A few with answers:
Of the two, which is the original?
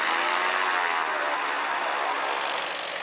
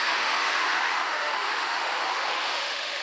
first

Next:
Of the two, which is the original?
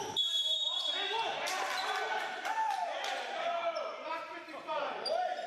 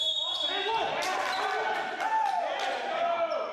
second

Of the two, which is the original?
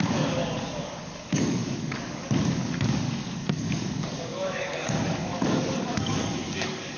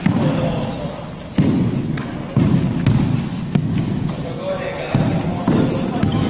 second